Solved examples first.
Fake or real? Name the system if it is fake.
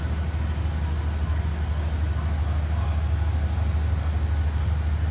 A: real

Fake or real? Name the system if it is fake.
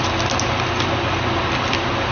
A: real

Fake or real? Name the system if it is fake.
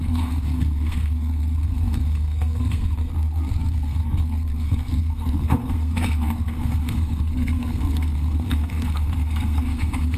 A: fake, codec, SNAC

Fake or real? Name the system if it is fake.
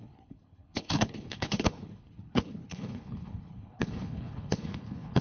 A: fake, codec, HILCodec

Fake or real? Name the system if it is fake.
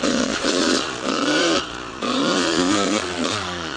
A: fake, vocoder, Vocos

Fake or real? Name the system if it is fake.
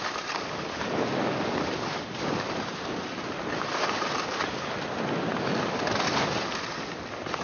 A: real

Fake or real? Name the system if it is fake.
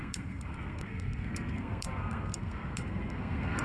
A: fake, codec, SNAC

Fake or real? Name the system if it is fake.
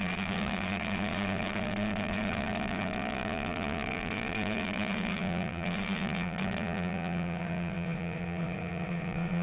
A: fake, vocoder, Vocos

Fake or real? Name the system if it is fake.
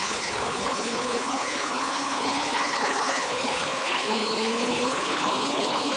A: fake, codec, HILCodec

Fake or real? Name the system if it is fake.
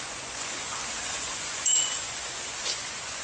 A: fake, vocoder, Vocos